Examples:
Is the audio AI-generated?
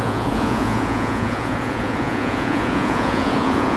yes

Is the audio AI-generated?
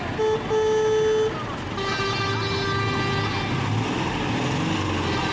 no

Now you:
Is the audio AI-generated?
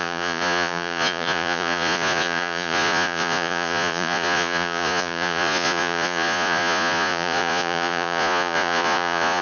yes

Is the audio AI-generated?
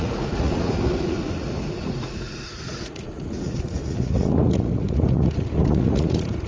yes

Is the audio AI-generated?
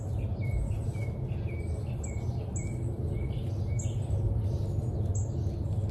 no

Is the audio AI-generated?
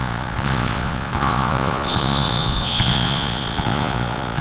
yes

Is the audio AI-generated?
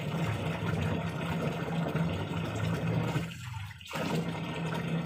no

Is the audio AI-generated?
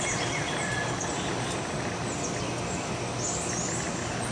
no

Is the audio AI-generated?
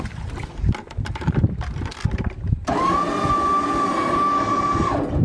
no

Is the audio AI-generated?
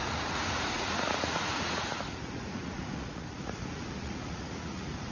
yes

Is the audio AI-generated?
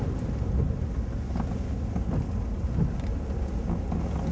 no